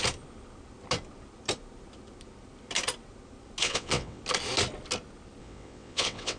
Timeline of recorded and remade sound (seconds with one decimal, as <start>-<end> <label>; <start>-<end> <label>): 0.0-3.6 recorded; 3.6-4.2 remade; 4.2-5.4 recorded; 5.4-6.4 remade